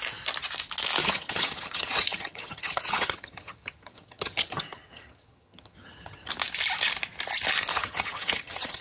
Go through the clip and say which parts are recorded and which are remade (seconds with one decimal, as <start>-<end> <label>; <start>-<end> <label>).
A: 0.0-1.0 recorded; 1.0-6.3 remade; 6.3-7.7 recorded; 7.7-8.8 remade